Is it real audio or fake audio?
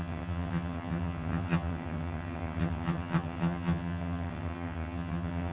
fake